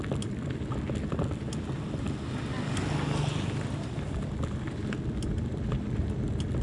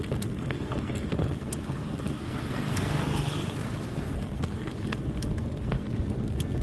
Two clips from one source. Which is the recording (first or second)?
first